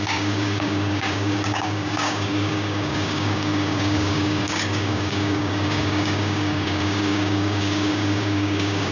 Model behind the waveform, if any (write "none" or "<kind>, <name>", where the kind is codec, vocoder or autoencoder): codec, DAC